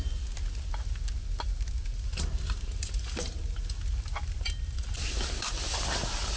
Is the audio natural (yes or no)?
yes